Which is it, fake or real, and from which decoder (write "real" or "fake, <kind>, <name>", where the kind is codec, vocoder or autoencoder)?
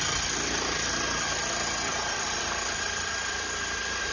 real